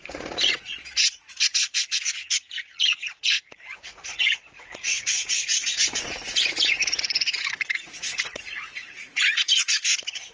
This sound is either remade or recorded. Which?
remade